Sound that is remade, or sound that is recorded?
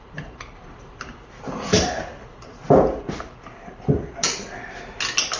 recorded